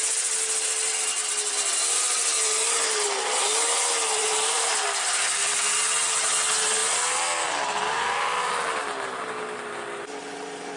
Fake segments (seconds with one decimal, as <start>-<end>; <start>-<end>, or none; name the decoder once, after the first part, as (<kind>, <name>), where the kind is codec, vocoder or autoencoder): 4.2-4.8 (vocoder, BigVGAN v2)

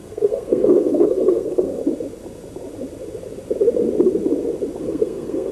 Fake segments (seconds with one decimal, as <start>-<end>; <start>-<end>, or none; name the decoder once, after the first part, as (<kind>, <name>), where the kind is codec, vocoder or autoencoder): 0.0-1.8 (codec, SNAC); 4.8-5.5